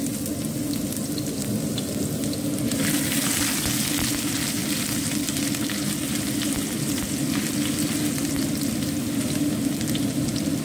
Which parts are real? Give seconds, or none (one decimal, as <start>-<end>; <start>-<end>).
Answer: 0.0-10.6